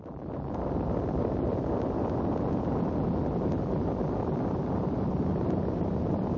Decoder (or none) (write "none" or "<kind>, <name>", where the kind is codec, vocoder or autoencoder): none